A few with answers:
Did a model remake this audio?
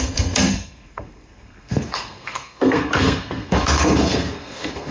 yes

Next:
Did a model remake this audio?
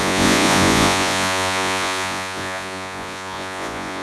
yes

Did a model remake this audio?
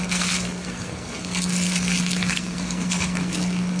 yes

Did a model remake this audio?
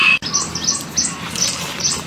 no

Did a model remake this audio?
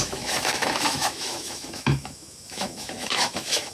yes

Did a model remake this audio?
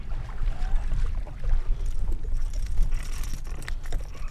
no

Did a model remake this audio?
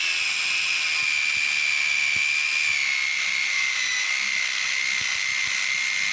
no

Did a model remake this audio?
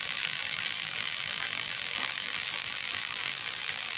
yes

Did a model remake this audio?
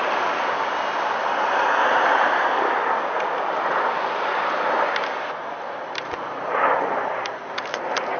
no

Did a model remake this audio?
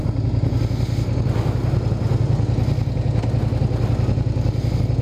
no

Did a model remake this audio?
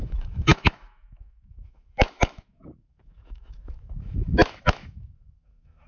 yes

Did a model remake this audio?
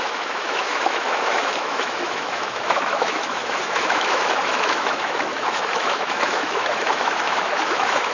yes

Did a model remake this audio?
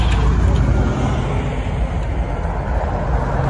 no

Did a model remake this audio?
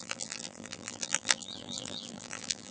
yes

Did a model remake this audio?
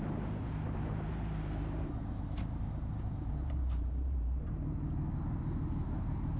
yes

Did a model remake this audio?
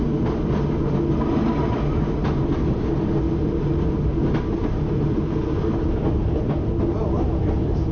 no